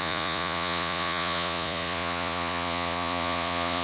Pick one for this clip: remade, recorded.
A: remade